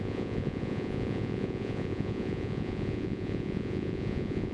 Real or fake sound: fake